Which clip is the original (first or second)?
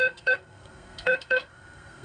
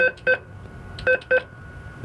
second